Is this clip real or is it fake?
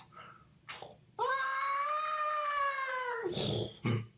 real